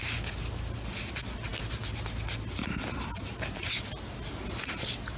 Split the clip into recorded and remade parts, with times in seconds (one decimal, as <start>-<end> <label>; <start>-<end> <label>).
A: 0.0-5.2 recorded

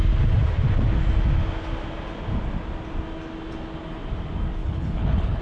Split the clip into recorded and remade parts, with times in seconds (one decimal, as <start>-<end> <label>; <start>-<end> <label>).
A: 0.0-4.6 recorded; 4.6-5.4 remade

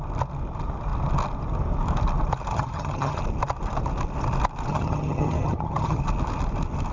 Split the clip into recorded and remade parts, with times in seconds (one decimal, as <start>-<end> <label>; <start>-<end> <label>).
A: 0.0-2.5 recorded; 2.5-3.2 remade; 3.2-4.7 recorded; 4.7-6.0 remade; 6.0-6.9 recorded

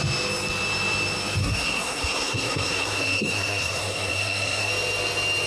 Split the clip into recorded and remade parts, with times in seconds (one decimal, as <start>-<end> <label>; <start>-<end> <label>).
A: 0.0-1.4 recorded; 1.4-4.7 remade; 4.7-5.5 recorded

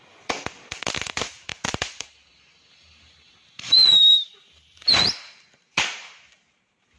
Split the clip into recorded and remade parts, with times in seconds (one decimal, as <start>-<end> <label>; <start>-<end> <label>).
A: 0.0-7.0 remade